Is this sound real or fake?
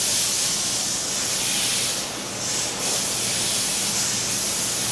real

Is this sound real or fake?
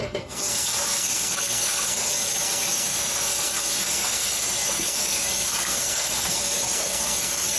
fake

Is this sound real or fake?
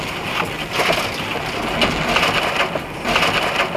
real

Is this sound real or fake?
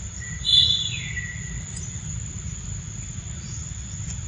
real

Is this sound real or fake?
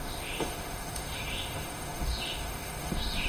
fake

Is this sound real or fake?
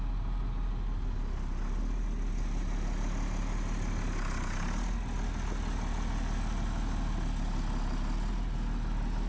real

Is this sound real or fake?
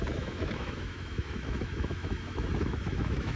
fake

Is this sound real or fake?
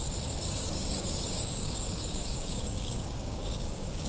fake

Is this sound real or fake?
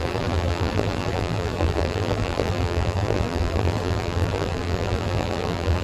fake